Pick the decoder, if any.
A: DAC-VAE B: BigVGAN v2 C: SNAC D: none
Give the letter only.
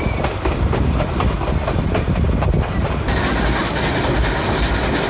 D